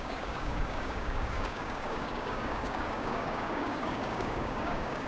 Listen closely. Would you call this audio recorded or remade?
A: remade